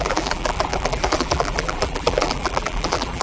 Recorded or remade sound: remade